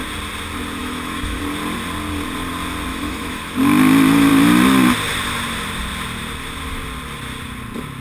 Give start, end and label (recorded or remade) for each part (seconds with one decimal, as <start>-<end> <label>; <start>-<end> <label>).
0.0-0.8 recorded; 0.8-1.4 remade; 1.4-2.9 recorded; 2.9-3.4 remade; 3.4-8.0 recorded